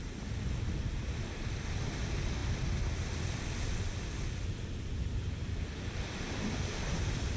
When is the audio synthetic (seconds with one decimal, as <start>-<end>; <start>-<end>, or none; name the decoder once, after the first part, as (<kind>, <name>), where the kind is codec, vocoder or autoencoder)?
none